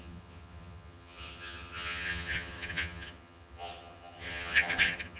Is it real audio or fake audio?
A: fake